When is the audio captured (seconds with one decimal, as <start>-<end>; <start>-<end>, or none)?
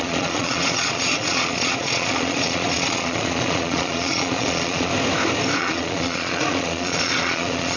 4.9-5.6